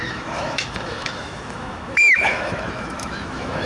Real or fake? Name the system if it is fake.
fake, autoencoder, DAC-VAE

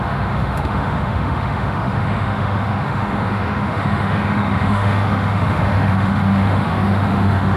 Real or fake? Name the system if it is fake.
fake, autoencoder, DAC-VAE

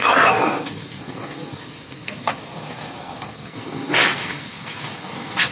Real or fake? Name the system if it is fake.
fake, codec, SNAC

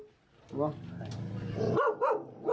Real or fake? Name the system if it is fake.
real